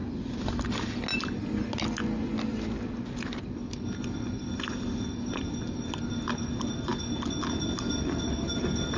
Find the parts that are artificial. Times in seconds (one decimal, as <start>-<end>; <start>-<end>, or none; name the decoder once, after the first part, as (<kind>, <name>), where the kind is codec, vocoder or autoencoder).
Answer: none